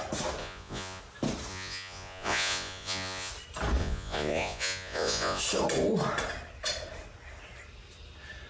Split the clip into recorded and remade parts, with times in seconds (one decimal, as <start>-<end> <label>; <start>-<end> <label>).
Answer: 0.0-0.4 recorded; 0.4-1.0 remade; 1.0-1.5 recorded; 1.5-3.3 remade; 3.3-3.8 recorded; 3.8-5.4 remade; 5.4-8.5 recorded

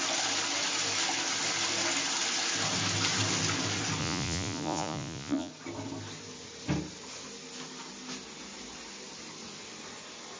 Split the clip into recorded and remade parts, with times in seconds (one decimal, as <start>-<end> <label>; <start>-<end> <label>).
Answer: 0.0-4.0 recorded; 4.0-5.5 remade; 5.5-10.4 recorded

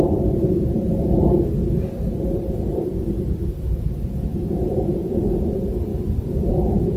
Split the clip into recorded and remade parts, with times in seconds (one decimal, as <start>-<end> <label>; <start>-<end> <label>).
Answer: 0.0-1.6 remade; 1.6-2.4 recorded; 2.4-5.9 remade; 5.9-6.5 recorded; 6.5-7.0 remade

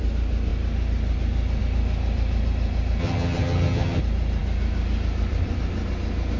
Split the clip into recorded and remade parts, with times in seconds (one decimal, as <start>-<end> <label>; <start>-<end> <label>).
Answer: 0.0-3.0 recorded; 3.0-4.0 remade; 4.0-6.4 recorded

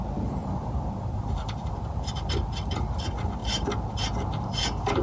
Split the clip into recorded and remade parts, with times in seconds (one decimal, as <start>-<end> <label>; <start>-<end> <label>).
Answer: 0.0-0.4 recorded; 0.4-2.3 remade; 2.3-5.0 recorded

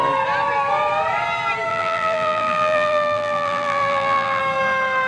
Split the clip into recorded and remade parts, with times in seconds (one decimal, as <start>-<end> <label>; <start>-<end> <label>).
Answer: 0.0-1.7 recorded; 1.7-4.4 remade; 4.4-5.1 recorded

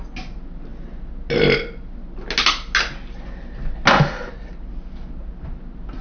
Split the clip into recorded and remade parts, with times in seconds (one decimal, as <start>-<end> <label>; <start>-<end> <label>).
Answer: 0.0-6.0 recorded